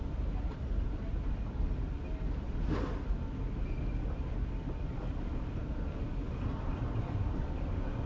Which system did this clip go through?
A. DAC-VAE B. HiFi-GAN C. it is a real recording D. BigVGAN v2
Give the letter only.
C